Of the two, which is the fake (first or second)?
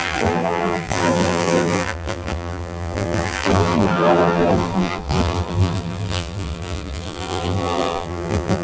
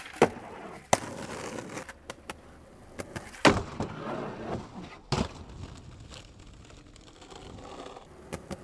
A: first